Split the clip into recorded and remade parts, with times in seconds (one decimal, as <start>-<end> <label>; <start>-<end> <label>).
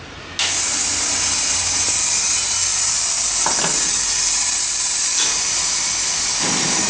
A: 0.0-6.9 recorded